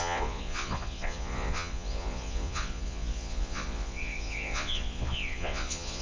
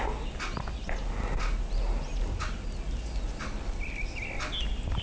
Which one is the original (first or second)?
second